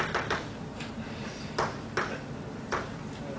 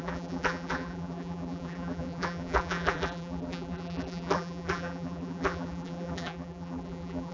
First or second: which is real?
first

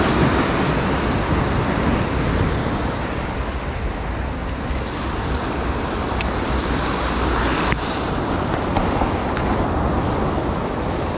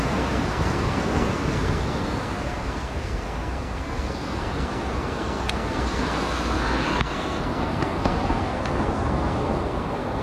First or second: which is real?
first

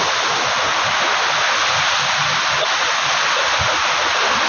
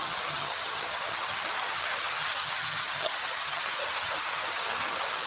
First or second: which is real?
first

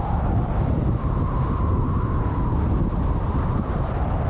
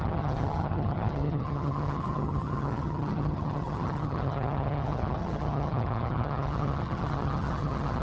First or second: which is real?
first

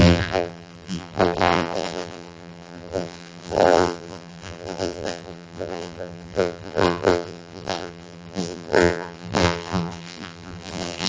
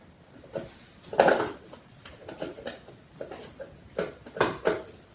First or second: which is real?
second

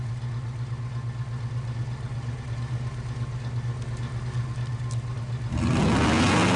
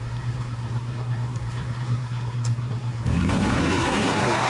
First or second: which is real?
first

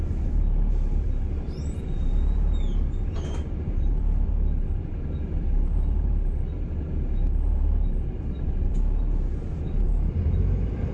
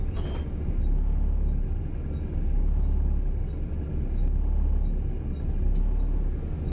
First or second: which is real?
second